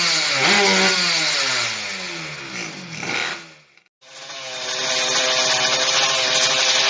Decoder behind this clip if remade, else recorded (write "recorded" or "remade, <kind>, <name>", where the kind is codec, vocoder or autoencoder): recorded